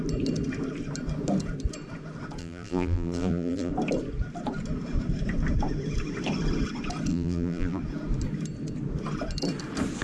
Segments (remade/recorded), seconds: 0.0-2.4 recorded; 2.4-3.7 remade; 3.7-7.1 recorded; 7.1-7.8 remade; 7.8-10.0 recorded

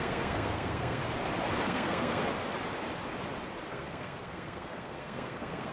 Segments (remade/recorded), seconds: 0.0-1.0 remade; 1.0-1.6 recorded; 1.6-2.2 remade; 2.2-3.7 recorded; 3.7-5.7 remade